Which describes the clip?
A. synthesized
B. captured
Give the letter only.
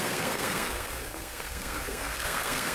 A